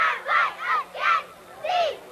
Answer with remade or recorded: recorded